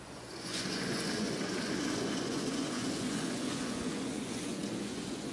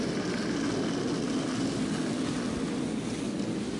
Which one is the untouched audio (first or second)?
second